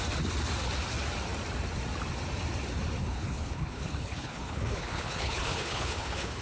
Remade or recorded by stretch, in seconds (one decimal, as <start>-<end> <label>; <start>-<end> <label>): 0.0-3.0 recorded; 3.0-6.4 remade